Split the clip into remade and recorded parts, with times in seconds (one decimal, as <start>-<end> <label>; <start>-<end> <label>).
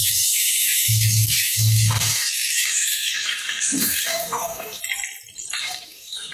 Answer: 0.0-4.8 remade; 4.8-5.6 recorded; 5.6-6.3 remade